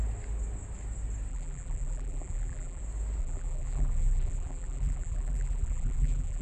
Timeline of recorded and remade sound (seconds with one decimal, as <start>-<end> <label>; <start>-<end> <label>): 0.0-1.3 recorded; 1.3-2.8 remade; 2.8-3.2 recorded; 3.2-6.4 remade